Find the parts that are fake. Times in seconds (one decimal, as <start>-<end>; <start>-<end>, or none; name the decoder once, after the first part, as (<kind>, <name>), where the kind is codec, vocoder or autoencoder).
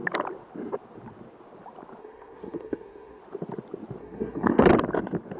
2.0-3.2 (codec, SNAC); 4.0-4.7